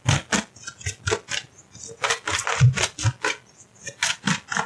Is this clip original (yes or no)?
yes